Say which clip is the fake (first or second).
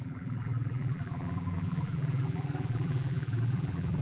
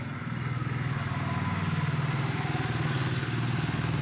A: first